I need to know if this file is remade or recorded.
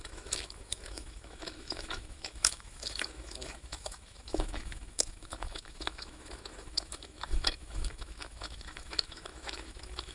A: remade